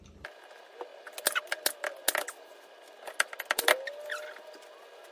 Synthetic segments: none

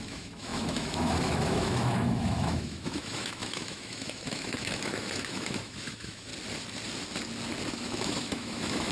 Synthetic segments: 0.0-6.3 (autoencoder, DAC-VAE); 7.7-8.9

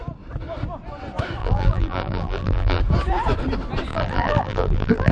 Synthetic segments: 1.4-2.8 (vocoder, BigVGAN v2); 3.9-5.1

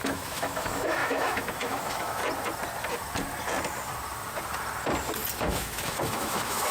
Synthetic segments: 0.0-2.2 (autoencoder, DAC-VAE); 5.4-6.7

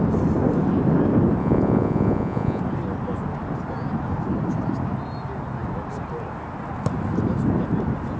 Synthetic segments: 1.4-2.6 (vocoder, Vocos)

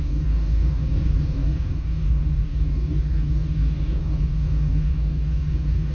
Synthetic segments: 0.0-5.9 (codec, DAC)

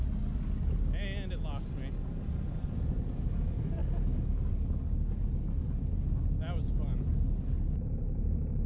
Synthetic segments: none